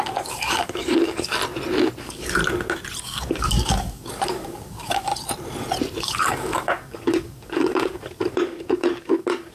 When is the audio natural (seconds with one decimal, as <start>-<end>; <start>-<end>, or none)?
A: 1.4-2.0; 2.4-3.0; 5.1-6.0